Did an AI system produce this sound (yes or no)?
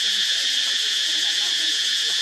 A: yes